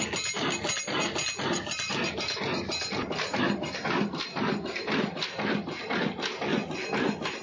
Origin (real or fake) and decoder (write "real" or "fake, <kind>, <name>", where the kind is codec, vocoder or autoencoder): real